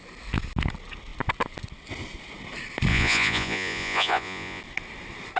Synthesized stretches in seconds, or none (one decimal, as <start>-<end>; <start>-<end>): 2.9-4.6